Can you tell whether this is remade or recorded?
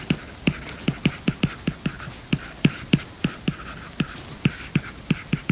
recorded